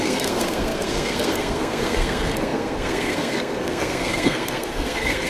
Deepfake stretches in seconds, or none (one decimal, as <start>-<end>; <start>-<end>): 0.0-5.3

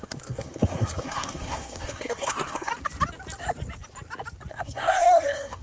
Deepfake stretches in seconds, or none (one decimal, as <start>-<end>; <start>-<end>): 0.0-2.7; 4.5-5.6

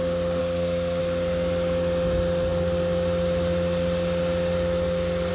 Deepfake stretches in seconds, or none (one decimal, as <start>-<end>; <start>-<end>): 0.4-1.0

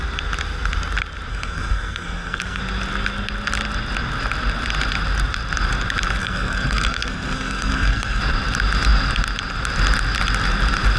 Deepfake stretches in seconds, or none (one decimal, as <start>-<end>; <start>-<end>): 1.3-2.6; 6.2-8.2